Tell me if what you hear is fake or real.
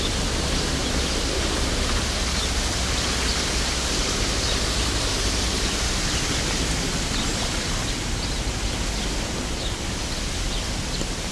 real